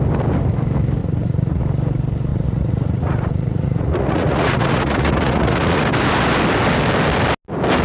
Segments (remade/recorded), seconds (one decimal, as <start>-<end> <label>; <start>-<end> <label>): 0.0-1.0 recorded; 1.0-1.6 remade; 1.6-2.3 recorded; 2.3-5.8 remade; 5.8-7.8 recorded